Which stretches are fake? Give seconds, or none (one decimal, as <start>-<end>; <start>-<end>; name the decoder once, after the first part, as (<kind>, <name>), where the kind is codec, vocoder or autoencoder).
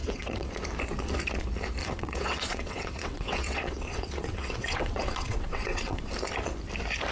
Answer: 0.0-0.5 (vocoder, WaveNeXt); 1.8-6.1